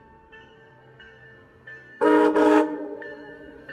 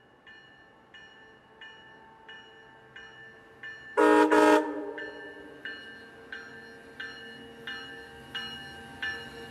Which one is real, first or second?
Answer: second